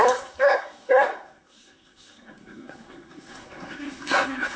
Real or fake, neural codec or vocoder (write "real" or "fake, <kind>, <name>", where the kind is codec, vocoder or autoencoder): fake, codec, SNAC